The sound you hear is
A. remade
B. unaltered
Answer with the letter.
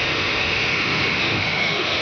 A